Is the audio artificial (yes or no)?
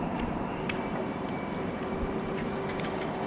yes